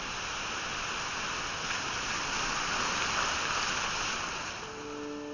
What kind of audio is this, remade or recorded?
recorded